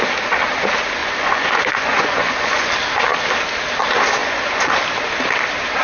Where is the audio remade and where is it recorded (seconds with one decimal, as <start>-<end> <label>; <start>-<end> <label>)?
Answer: 0.0-1.0 recorded; 1.0-2.7 remade; 2.7-4.2 recorded; 4.2-4.8 remade; 4.8-5.8 recorded